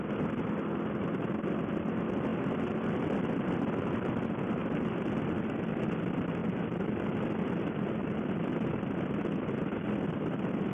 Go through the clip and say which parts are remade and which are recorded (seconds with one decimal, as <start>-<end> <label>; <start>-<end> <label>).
0.0-10.7 recorded